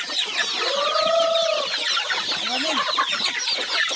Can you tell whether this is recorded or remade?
recorded